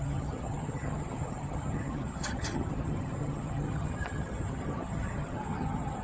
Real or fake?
fake